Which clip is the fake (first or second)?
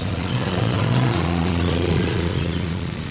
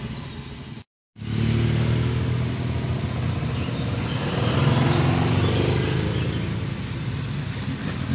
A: first